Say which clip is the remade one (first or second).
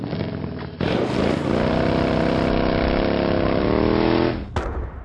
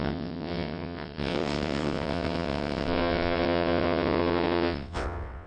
second